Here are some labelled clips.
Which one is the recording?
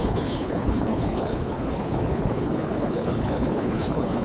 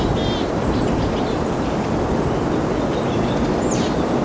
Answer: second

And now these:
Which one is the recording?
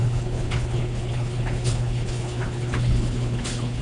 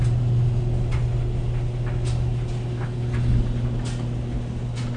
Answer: second